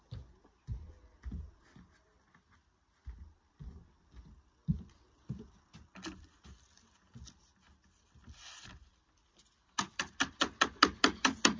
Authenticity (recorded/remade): recorded